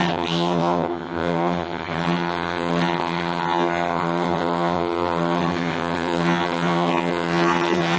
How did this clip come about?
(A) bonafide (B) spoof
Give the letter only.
B